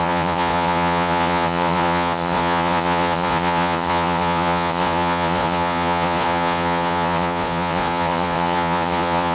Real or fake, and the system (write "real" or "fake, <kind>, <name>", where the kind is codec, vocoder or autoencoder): fake, vocoder, Vocos